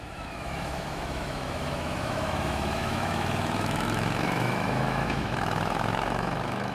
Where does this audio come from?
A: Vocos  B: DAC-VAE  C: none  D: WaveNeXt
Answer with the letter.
B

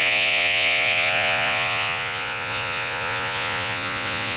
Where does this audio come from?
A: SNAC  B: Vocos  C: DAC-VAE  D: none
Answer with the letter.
B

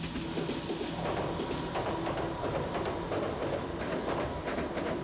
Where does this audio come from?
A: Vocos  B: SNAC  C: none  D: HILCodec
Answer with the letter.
C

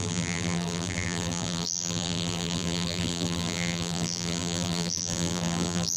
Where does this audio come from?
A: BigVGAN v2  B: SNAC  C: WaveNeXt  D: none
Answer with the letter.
A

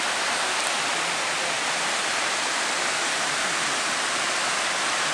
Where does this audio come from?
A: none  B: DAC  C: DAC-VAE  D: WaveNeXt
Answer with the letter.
A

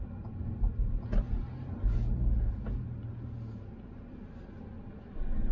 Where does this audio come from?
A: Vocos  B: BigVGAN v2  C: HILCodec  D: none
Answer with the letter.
D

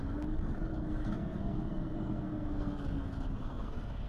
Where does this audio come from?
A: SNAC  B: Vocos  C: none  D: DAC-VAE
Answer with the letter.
A